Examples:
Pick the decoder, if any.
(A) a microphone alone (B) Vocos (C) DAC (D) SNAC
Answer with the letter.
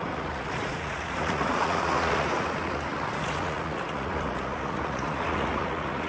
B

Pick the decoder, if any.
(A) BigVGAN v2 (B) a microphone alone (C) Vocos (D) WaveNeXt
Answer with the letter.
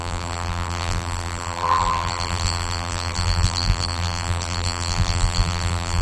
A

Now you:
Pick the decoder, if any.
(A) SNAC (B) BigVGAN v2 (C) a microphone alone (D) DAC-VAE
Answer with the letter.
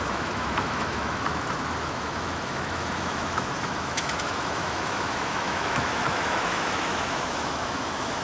D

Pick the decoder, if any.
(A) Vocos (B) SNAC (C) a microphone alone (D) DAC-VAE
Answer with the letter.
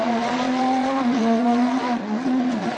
A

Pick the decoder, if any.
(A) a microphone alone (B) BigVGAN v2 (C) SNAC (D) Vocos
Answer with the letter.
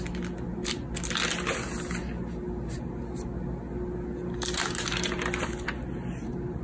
A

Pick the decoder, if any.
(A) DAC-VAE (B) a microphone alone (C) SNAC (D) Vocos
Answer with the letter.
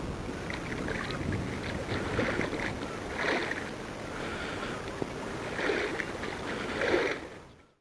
B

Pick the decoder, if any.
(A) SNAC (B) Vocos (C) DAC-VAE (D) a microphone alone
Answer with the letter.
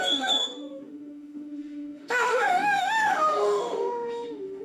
C